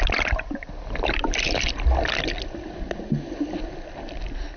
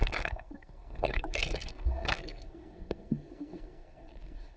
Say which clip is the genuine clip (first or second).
first